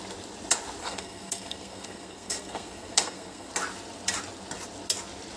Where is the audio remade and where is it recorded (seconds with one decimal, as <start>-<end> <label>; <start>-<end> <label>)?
0.0-0.8 recorded; 0.8-3.5 remade; 3.5-5.4 recorded